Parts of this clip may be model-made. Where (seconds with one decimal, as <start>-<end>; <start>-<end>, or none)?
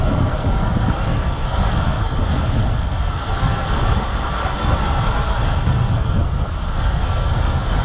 0.0-7.8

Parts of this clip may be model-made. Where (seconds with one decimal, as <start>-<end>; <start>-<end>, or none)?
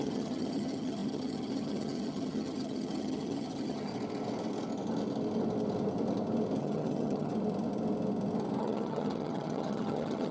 0.0-3.9; 6.6-7.3; 8.6-10.3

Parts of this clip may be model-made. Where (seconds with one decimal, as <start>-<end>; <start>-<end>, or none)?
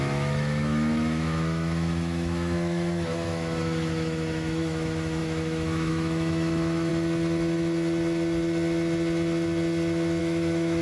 0.0-6.9; 10.2-10.8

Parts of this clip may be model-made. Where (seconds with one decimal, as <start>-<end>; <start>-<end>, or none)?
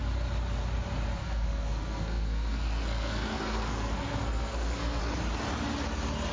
1.2-5.0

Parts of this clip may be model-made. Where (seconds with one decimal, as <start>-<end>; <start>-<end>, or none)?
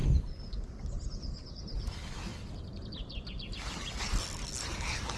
none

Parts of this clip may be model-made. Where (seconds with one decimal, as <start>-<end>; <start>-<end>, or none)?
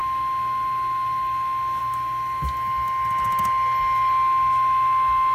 none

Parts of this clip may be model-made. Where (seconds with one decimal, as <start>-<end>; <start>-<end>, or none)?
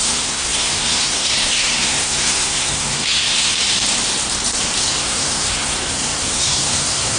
0.0-3.5; 4.8-7.2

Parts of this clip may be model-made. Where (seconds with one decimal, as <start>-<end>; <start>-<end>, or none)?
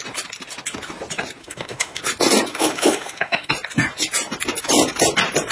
1.4-2.0; 2.5-3.5